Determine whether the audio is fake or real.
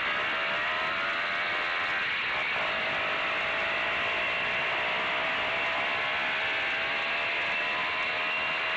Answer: real